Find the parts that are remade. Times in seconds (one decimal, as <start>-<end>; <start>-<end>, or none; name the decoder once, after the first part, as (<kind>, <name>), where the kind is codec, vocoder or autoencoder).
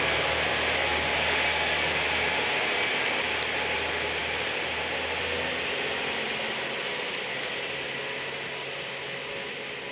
1.1-1.9 (codec, DAC)